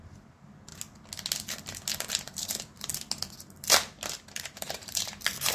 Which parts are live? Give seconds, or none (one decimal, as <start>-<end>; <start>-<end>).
0.7-2.1; 2.9-4.3

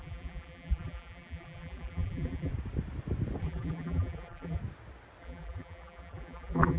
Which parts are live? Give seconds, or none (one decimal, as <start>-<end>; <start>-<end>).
2.5-3.4; 4.6-5.2

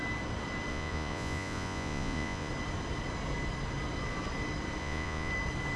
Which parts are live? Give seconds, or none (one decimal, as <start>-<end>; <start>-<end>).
0.0-0.7; 2.5-4.8; 5.3-5.8